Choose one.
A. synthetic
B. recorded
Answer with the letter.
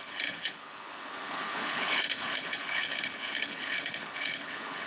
A